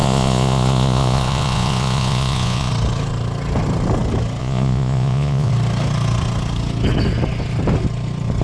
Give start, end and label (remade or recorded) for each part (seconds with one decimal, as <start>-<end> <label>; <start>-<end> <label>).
0.0-2.7 remade; 2.7-4.4 recorded; 4.4-5.5 remade; 5.5-8.4 recorded